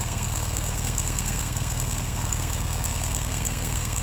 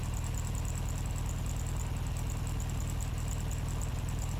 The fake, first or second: first